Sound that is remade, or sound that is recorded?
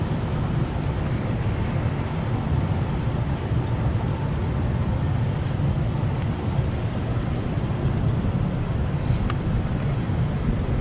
recorded